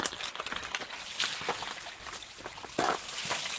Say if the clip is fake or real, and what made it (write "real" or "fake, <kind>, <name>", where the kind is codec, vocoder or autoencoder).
real